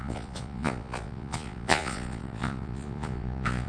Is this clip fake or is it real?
fake